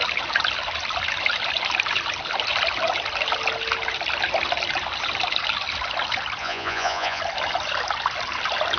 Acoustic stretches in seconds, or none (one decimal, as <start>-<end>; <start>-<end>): 0.0-6.4; 7.2-8.8